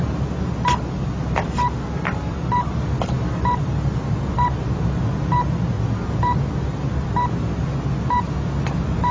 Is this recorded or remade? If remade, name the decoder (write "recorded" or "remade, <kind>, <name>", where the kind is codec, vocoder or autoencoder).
recorded